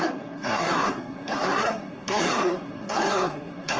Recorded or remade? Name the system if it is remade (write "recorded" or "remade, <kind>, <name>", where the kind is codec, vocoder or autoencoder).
remade, codec, SNAC